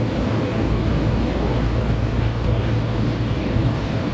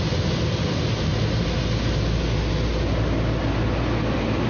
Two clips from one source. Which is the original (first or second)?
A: second